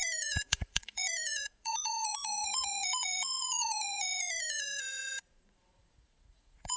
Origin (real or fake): fake